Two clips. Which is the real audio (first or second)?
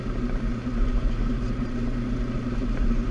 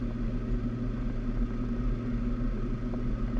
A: second